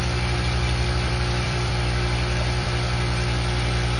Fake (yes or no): yes